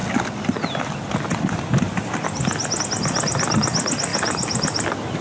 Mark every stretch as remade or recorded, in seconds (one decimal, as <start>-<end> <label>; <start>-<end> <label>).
0.0-5.2 recorded